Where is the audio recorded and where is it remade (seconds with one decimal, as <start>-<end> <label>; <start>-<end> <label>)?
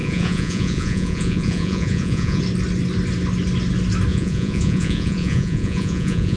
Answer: 0.0-2.4 remade; 2.4-4.1 recorded; 4.1-6.4 remade